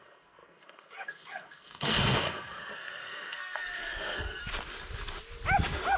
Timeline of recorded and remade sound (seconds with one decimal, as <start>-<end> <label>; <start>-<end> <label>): 0.0-4.4 remade; 4.4-6.0 recorded